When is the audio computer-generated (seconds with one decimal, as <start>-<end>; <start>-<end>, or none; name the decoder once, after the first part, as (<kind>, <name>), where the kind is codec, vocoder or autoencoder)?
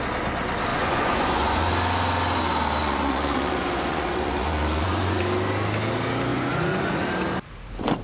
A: 0.7-1.7 (vocoder, Vocos); 2.8-5.2; 6.3-7.0